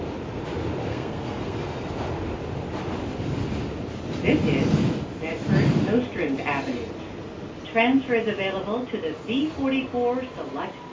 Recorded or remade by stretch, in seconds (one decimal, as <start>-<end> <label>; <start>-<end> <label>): 0.0-0.9 recorded; 0.9-1.6 remade; 1.6-10.9 recorded